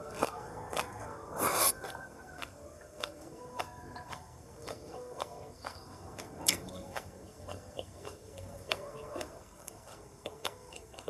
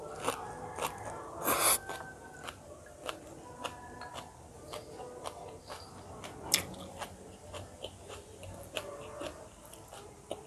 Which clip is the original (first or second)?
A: second